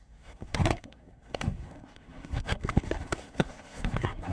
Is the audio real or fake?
fake